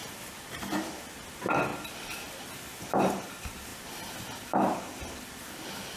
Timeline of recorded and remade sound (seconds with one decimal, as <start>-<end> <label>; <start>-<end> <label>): 0.0-6.0 recorded

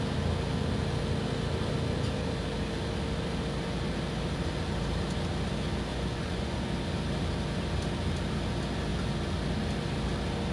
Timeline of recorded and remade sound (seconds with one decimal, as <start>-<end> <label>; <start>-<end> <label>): 0.0-5.9 recorded; 5.9-6.7 remade; 6.7-10.5 recorded

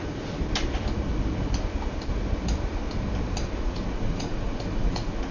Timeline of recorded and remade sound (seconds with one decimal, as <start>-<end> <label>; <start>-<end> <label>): 0.0-0.4 remade; 0.4-3.6 recorded; 3.6-5.3 remade

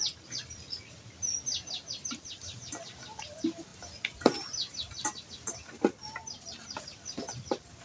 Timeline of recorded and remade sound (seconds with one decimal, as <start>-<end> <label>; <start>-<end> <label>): 0.0-7.8 recorded

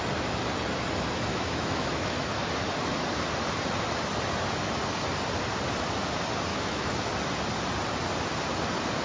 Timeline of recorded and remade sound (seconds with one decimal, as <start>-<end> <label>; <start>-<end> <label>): 0.0-1.3 recorded; 1.3-2.3 remade; 2.3-6.5 recorded; 6.5-7.0 remade; 7.0-9.0 recorded

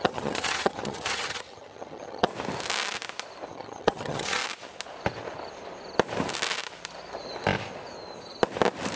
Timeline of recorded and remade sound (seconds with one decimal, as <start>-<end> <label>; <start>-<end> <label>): 0.0-2.3 remade; 2.3-3.5 recorded; 3.5-4.4 remade; 4.4-9.0 recorded